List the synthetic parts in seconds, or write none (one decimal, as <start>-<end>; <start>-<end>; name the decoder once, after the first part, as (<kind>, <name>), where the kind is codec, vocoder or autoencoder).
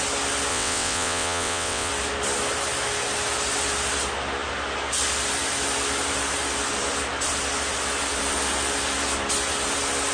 0.5-1.9 (vocoder, WaveNeXt)